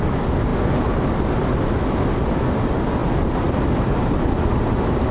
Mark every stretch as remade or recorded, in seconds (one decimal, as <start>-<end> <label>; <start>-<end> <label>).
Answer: 0.0-5.1 recorded